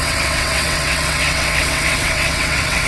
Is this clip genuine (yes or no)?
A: no